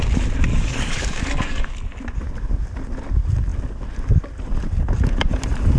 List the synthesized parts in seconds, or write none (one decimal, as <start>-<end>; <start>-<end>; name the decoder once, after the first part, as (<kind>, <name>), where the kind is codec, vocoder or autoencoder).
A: 0.5-1.7 (codec, DAC)